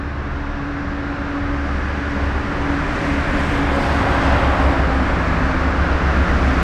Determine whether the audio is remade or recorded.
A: recorded